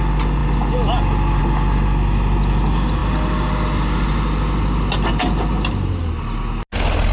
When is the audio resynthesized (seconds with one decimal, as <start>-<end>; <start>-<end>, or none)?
none